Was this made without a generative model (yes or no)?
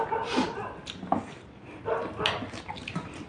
yes